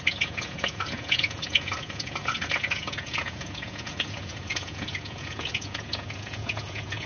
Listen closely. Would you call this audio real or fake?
fake